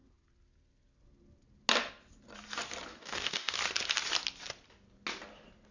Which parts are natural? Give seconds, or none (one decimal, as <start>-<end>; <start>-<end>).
0.0-2.9; 3.5-5.7